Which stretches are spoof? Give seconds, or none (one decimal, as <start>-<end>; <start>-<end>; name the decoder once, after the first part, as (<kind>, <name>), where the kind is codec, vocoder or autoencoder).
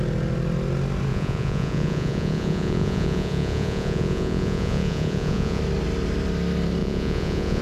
1.1-5.6 (vocoder, Vocos); 6.8-7.6